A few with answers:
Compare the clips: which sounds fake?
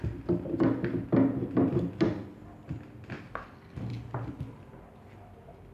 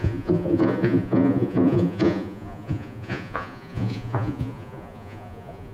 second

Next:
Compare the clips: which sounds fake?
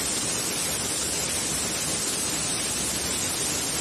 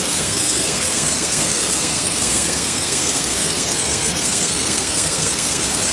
second